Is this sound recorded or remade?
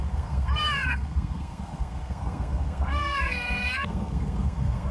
remade